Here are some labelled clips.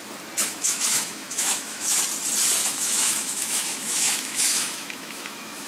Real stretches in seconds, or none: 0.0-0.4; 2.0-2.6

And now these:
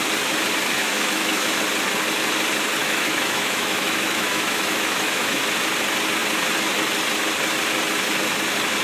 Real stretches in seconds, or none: 0.0-0.8; 1.6-2.8; 5.4-8.8

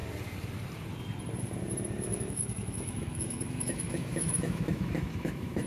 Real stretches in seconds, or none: 0.0-2.1

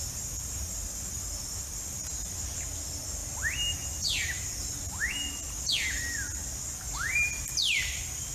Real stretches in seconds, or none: 0.0-8.3

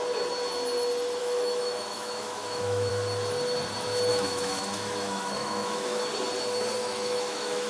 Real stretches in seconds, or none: 0.0-1.2; 2.9-4.1; 6.0-6.8

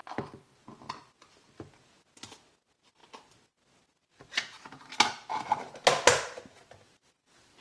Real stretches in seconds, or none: 0.0-7.6

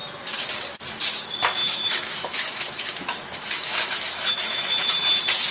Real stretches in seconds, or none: 0.0-1.6; 4.9-5.5

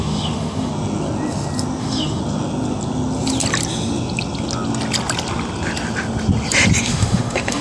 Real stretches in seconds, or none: 0.7-1.8; 2.2-6.8